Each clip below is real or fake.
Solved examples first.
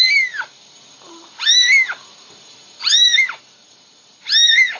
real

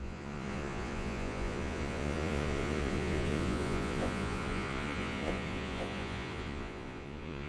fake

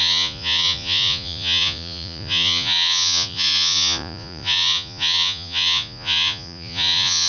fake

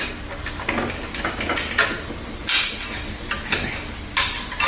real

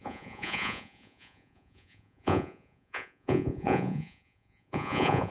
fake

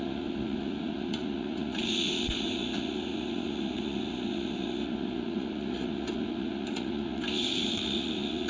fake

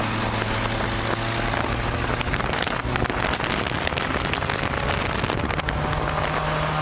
real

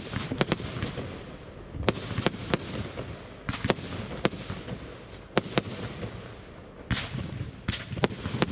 real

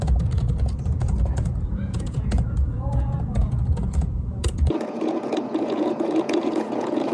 fake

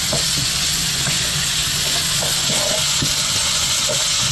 fake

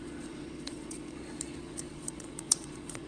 fake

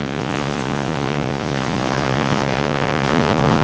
fake